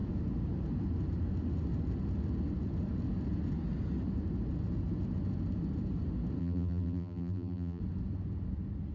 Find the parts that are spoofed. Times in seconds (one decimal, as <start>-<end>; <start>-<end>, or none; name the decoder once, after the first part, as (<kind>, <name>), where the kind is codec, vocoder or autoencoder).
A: 6.4-7.8 (vocoder, BigVGAN v2)